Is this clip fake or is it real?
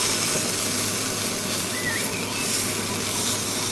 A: real